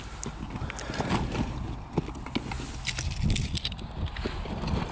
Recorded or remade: recorded